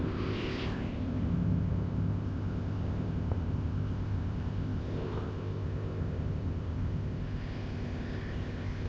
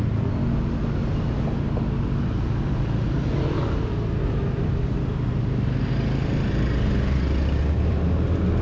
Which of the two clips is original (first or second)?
second